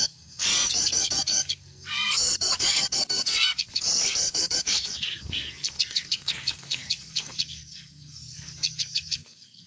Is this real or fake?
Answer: fake